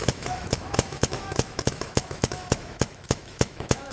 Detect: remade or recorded remade